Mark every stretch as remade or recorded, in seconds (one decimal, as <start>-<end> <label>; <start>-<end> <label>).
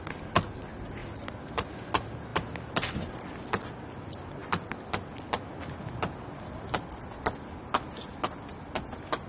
0.0-9.3 recorded